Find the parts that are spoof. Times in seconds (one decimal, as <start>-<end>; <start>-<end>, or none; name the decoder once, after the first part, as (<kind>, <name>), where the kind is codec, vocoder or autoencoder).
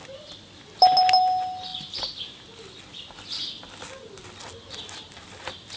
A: none